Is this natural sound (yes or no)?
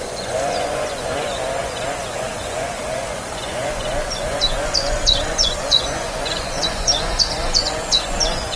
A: no